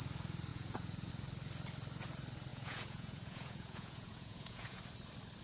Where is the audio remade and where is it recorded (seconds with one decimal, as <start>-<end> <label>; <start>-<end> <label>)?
0.0-0.5 recorded; 0.5-1.1 remade; 1.1-2.5 recorded; 2.5-4.8 remade; 4.8-5.4 recorded